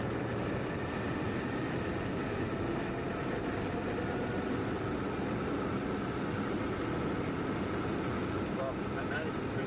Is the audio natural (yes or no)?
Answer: yes